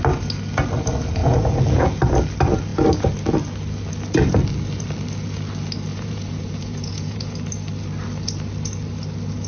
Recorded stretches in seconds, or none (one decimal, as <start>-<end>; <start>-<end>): 0.0-1.2; 2.0-5.9; 7.3-9.5